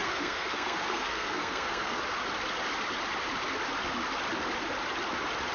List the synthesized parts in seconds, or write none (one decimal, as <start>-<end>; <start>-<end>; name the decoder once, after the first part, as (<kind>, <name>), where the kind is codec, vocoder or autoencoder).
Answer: 0.0-2.0 (codec, SNAC)